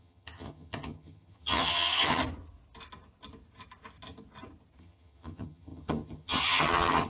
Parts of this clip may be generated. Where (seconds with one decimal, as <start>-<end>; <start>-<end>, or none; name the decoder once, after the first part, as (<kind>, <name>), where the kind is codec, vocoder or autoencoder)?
0.0-2.2 (vocoder, HiFi-GAN); 4.8-7.1